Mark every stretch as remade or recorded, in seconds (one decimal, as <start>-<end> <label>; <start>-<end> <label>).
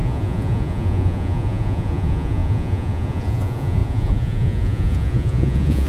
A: 0.0-5.9 remade